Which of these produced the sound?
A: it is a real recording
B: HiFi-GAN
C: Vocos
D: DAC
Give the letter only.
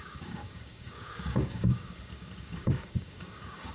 D